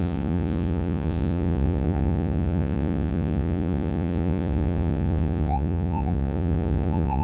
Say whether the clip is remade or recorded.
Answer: remade